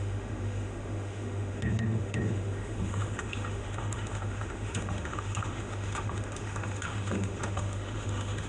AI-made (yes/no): yes